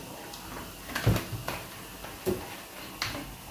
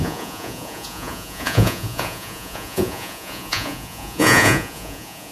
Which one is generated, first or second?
second